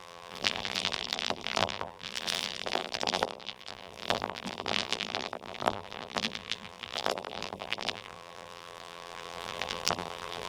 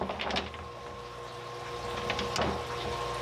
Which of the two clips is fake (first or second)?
first